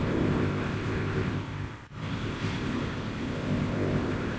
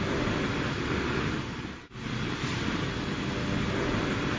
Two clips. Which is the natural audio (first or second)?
second